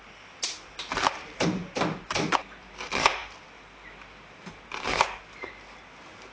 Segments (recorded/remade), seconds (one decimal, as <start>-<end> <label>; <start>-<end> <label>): 0.0-6.3 recorded